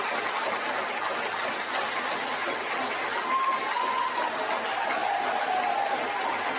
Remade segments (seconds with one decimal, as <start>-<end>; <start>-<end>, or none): none